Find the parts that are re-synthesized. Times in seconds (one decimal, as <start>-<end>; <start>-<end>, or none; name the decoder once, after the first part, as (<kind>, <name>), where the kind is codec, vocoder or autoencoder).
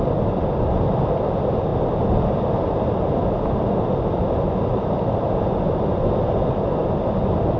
none